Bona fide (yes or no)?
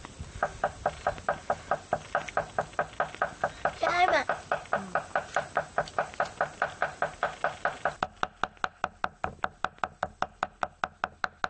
yes